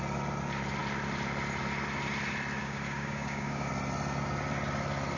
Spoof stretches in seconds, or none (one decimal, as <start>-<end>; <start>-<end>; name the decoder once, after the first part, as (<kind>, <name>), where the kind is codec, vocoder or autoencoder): 2.6-3.7 (codec, DAC)